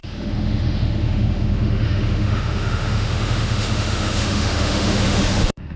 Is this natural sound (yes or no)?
no